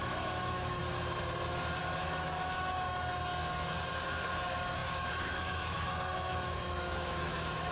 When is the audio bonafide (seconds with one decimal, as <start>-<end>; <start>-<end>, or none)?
0.8-1.8; 3.3-3.9